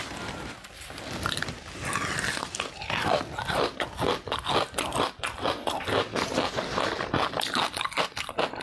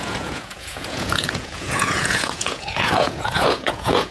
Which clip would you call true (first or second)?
first